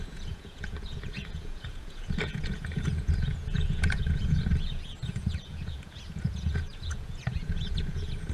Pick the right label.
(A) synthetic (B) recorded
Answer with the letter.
A